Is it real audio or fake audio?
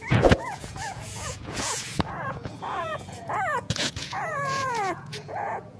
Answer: fake